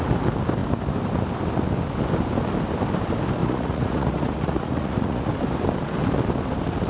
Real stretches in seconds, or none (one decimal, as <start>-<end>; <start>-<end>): 0.0-3.4; 5.3-6.9